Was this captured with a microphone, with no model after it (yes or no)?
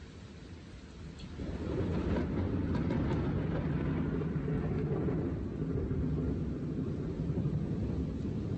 yes